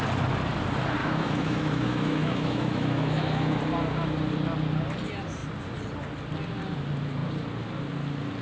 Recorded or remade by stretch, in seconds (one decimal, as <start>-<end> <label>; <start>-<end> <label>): 0.0-1.0 recorded; 1.0-3.6 remade; 3.6-8.4 recorded